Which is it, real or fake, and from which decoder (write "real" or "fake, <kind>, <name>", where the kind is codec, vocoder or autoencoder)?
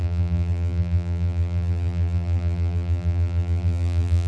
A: fake, vocoder, BigVGAN v2